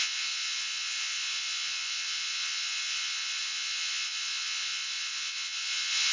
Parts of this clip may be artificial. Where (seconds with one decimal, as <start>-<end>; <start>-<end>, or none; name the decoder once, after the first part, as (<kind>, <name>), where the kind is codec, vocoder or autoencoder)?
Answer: 0.0-6.1 (vocoder, Vocos)